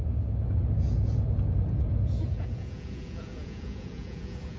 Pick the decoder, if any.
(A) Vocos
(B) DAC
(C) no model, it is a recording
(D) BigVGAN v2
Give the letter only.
A